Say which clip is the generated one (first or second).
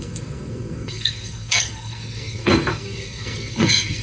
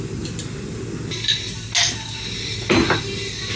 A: first